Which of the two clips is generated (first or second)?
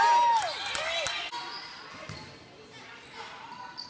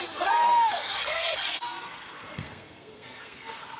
second